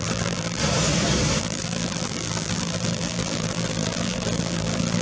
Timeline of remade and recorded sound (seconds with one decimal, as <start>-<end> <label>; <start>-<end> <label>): 0.0-0.6 remade; 0.6-1.4 recorded; 1.4-5.0 remade